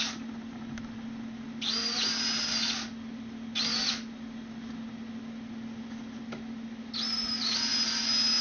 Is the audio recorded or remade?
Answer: recorded